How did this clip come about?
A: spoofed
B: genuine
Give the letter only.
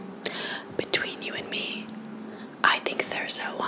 B